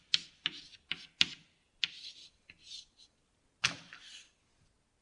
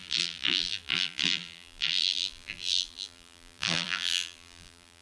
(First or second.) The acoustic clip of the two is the first